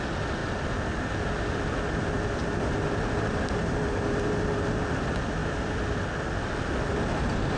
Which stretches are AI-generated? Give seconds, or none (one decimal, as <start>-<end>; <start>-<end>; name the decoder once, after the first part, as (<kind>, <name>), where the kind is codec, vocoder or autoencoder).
none